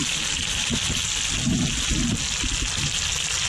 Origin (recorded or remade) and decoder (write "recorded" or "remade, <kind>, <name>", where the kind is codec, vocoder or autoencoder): recorded